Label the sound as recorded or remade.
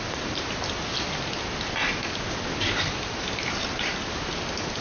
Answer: recorded